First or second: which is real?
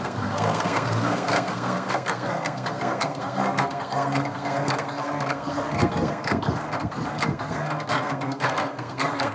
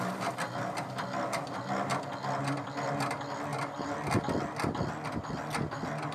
second